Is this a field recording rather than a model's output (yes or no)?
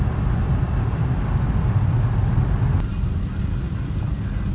yes